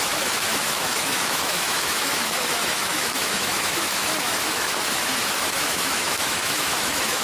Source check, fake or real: fake